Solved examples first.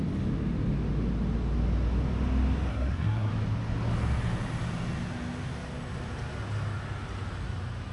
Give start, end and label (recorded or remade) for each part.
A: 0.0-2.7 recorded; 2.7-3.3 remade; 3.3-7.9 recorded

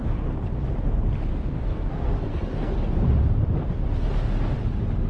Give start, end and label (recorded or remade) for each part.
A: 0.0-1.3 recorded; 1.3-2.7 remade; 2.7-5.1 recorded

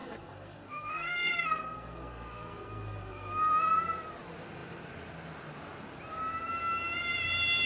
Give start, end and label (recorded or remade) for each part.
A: 0.0-3.4 remade; 3.4-7.7 recorded

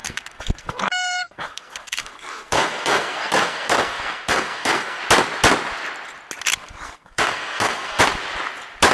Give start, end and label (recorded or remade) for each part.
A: 0.0-5.0 remade; 5.0-6.6 recorded; 6.6-8.0 remade; 8.0-8.9 recorded

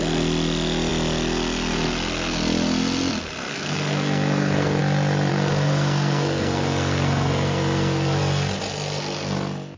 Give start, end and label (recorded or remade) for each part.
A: 0.0-3.5 recorded; 3.5-4.8 remade; 4.8-5.3 recorded; 5.3-8.2 remade; 8.2-9.8 recorded

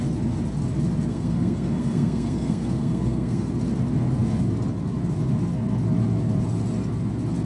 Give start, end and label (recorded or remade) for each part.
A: 0.0-1.1 recorded; 1.1-3.5 remade; 3.5-7.5 recorded

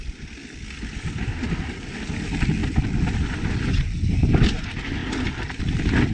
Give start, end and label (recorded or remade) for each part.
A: 0.0-6.1 recorded